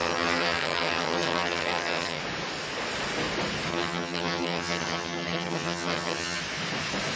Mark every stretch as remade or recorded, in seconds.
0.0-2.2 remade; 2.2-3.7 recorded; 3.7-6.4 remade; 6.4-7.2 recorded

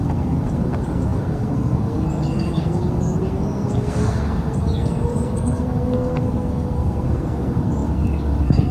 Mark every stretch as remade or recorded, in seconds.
0.0-8.7 remade

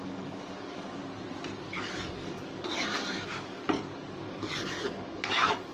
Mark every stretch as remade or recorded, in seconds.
0.0-1.0 remade; 1.0-1.7 recorded; 1.7-3.6 remade; 3.6-4.1 recorded; 4.1-5.7 remade

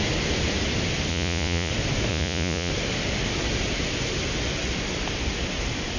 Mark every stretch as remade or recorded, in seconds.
0.0-1.1 recorded; 1.1-1.7 remade; 1.7-2.1 recorded; 2.1-2.7 remade; 2.7-6.0 recorded